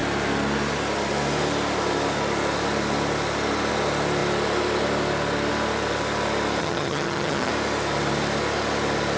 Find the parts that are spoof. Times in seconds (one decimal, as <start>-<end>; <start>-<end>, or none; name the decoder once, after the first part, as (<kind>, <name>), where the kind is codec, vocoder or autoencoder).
6.6-7.5 (vocoder, HiFi-GAN)